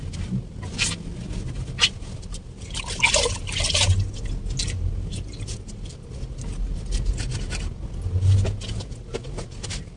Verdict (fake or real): real